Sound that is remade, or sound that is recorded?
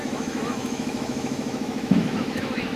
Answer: remade